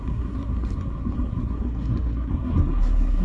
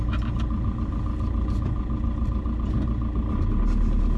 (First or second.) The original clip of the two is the second